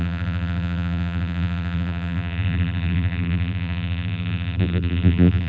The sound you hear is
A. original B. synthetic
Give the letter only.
B